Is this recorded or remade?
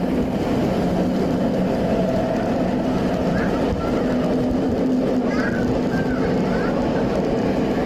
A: recorded